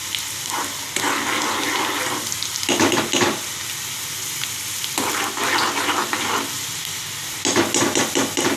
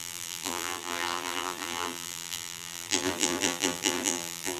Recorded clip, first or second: first